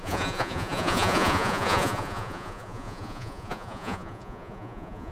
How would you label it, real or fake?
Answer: fake